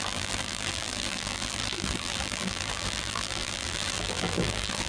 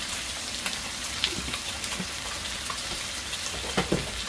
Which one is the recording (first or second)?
second